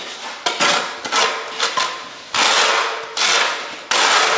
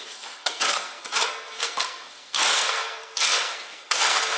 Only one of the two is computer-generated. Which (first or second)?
second